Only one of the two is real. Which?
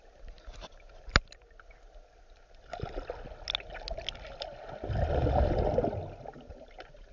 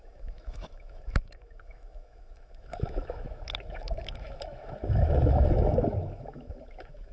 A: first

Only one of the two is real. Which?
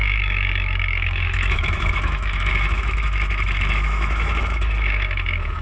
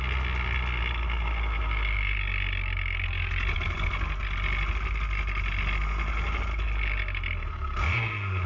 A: second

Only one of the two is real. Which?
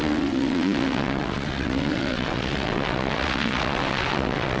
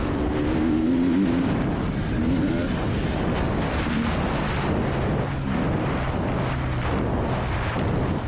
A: second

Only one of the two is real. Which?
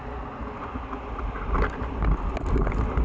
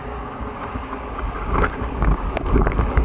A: first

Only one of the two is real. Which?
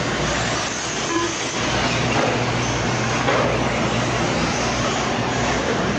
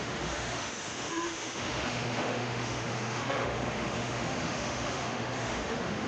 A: first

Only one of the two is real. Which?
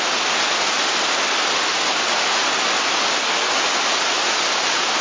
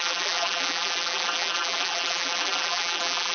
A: first